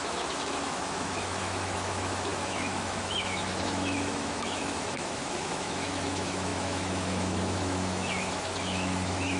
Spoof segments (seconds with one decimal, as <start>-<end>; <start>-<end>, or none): 0.0-9.4